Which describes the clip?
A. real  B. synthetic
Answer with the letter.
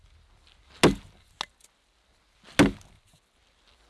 A